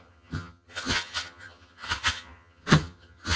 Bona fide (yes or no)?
no